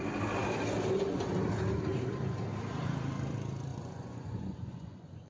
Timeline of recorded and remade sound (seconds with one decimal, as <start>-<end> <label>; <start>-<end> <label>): 0.0-3.7 recorded; 3.7-5.3 remade